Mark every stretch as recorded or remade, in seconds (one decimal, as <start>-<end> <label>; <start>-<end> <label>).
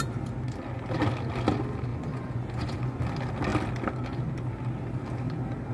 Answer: 0.0-1.9 recorded; 1.9-3.0 remade; 3.0-5.7 recorded